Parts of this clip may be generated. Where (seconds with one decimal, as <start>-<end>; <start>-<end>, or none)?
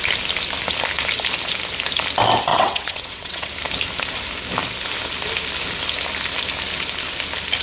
2.5-3.5